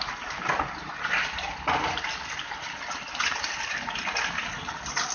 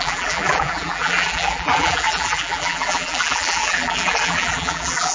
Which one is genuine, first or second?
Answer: first